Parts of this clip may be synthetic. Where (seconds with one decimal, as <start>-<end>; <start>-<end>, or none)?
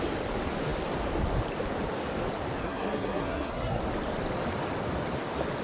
2.6-3.8